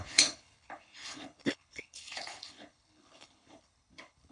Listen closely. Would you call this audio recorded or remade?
remade